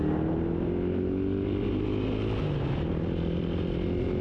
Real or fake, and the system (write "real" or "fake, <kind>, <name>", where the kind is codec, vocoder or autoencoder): real